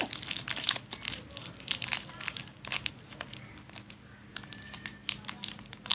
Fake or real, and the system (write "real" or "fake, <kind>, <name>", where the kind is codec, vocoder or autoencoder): real